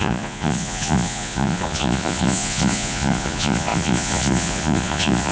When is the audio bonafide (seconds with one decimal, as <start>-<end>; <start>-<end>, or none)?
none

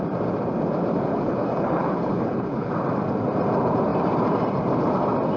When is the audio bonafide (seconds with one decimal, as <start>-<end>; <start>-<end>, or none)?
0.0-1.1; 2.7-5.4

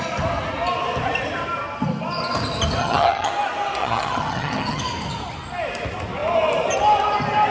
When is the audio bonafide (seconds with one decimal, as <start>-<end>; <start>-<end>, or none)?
0.0-2.8; 3.3-3.8; 4.8-7.5

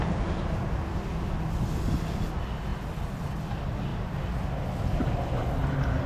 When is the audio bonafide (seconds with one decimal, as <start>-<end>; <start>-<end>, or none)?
0.0-6.1

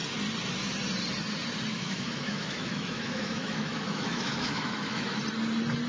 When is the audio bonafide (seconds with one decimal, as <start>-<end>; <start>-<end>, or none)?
0.0-1.7; 5.2-5.9

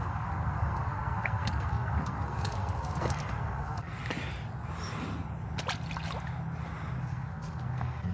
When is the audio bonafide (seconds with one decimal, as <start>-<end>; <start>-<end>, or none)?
4.0-7.0

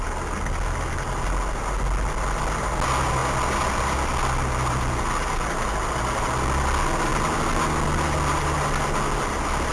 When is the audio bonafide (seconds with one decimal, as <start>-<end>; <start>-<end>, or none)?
0.0-9.7

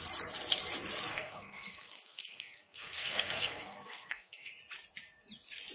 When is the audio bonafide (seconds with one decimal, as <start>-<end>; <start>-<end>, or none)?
0.0-1.1; 4.5-5.7